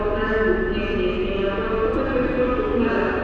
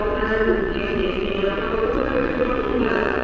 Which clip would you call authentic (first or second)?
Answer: first